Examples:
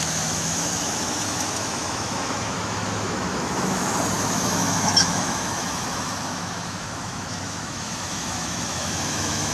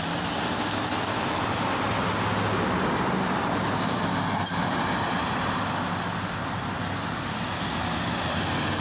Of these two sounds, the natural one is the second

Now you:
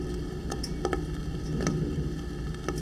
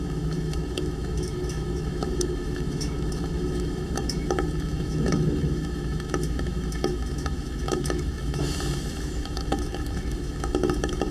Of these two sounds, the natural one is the first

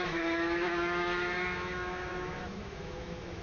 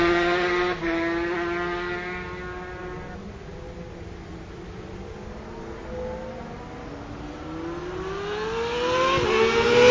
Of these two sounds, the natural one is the second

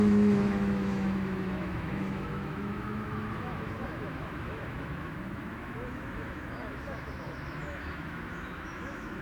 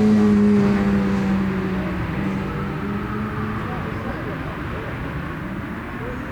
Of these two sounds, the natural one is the second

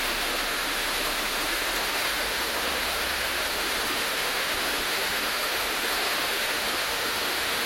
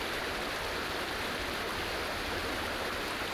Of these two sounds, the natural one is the second